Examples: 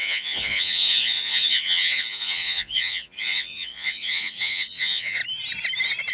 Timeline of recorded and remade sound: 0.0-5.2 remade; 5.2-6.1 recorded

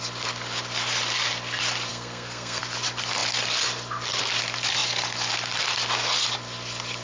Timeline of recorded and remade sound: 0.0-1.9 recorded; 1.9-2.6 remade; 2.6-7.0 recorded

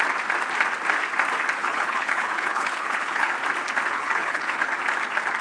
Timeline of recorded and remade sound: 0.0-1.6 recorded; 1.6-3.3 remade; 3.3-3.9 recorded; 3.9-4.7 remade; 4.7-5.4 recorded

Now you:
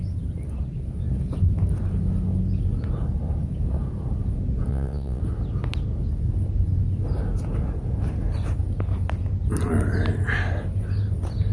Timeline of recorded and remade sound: 0.0-4.7 recorded; 4.7-5.2 remade; 5.2-11.5 recorded

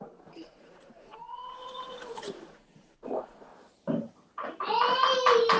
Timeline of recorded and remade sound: 0.0-3.5 remade; 3.5-5.6 recorded